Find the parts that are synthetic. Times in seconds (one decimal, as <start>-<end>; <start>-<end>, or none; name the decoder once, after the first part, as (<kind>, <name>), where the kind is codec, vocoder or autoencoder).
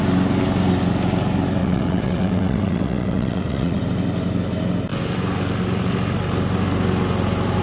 1.6-3.8 (vocoder, WaveNeXt)